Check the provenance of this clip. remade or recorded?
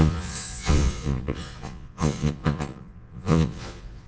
remade